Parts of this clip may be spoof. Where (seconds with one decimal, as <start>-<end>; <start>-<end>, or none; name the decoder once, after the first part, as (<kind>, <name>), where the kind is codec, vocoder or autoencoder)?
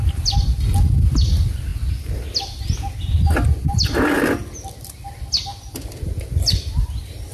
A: none